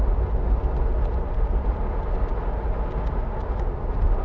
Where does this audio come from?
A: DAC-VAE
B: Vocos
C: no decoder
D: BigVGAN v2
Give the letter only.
C